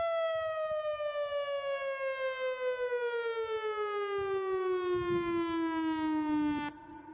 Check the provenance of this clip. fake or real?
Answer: real